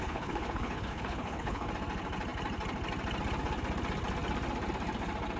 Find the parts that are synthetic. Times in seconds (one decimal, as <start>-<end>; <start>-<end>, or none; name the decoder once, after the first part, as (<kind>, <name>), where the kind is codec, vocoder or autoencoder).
0.0-1.7 (codec, HILCodec)